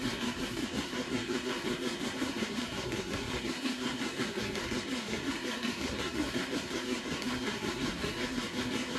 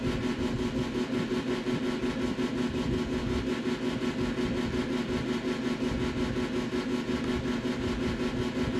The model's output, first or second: first